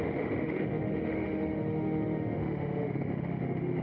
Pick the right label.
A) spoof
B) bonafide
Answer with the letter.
A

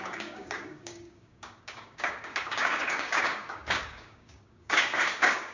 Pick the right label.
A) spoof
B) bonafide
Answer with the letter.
A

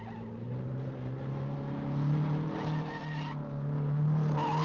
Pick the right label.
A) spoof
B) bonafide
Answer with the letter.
B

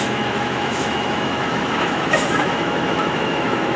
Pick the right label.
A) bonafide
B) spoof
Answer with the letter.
B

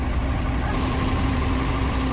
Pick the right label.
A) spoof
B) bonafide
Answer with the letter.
B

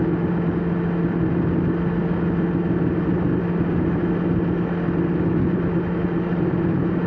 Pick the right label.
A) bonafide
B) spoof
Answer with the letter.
A